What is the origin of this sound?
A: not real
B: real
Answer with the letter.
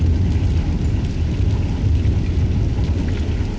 B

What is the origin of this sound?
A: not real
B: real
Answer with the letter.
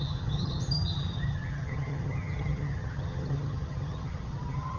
A